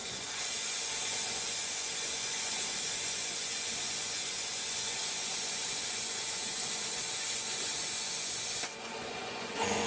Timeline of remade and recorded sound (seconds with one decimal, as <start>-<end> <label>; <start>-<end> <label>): 0.0-9.9 remade